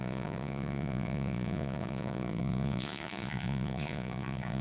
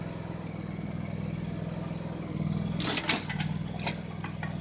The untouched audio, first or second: second